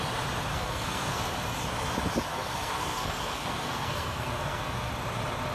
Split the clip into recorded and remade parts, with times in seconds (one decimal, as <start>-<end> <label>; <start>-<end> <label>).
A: 0.0-0.5 recorded; 0.5-1.3 remade; 1.3-2.3 recorded; 2.3-4.9 remade; 4.9-5.5 recorded